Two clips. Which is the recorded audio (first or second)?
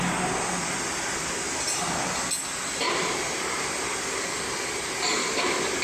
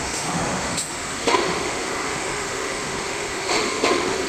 first